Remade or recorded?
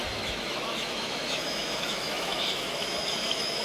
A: remade